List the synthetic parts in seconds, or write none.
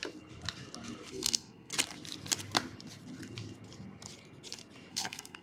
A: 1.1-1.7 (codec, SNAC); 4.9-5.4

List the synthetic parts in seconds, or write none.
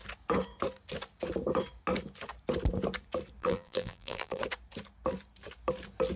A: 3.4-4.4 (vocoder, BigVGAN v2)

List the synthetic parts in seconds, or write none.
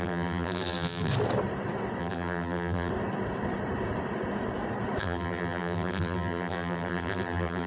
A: 0.0-1.1 (vocoder, BigVGAN v2); 2.0-2.9; 5.0-7.7